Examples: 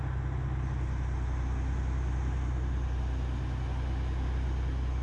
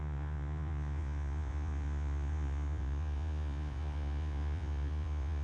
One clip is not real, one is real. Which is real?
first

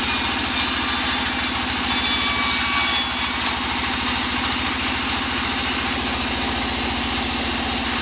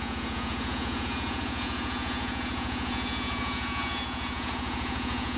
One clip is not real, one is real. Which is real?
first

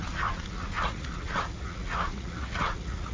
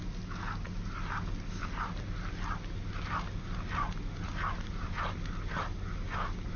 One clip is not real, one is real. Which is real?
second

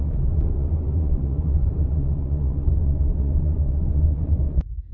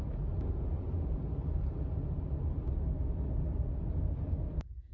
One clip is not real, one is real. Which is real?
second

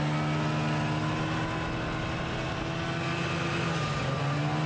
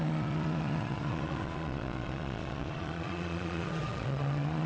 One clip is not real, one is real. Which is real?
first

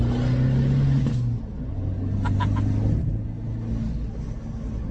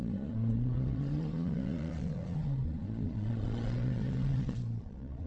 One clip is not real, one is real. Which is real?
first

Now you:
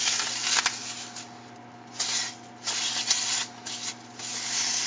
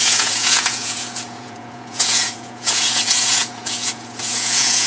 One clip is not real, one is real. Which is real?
first